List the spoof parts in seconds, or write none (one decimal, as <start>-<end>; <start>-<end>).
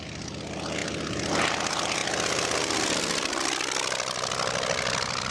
none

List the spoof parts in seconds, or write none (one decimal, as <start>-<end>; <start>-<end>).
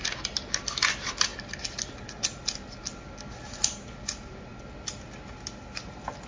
none